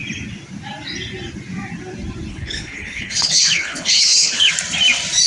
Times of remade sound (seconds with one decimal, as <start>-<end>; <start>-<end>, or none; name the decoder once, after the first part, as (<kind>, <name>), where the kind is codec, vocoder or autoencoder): 2.3-4.5 (codec, HILCodec)